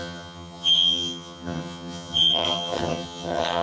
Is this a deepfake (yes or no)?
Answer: yes